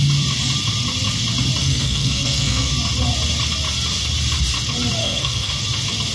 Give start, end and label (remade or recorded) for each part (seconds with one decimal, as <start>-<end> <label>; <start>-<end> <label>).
0.0-1.6 recorded; 1.6-2.7 remade; 2.7-5.0 recorded; 5.0-5.5 remade; 5.5-6.1 recorded